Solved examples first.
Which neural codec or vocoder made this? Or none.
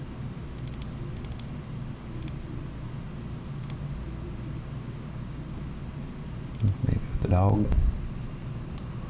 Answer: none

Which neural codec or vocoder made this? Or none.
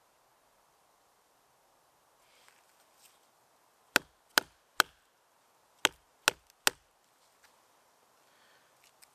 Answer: none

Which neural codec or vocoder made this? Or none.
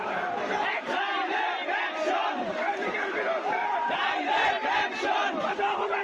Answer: vocoder, BigVGAN v2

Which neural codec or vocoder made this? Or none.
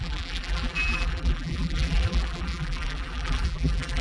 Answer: vocoder, BigVGAN v2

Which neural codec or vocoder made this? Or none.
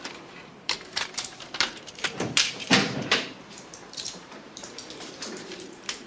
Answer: vocoder, BigVGAN v2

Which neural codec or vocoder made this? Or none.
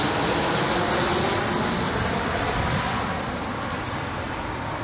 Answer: none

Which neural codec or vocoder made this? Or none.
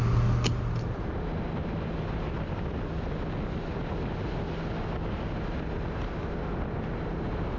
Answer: none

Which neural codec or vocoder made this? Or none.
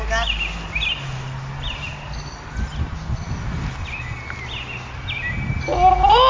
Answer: none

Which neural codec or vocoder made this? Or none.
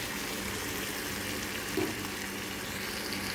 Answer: none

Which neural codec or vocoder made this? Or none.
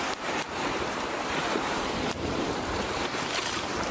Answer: vocoder, BigVGAN v2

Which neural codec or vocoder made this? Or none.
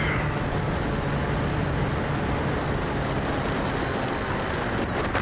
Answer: none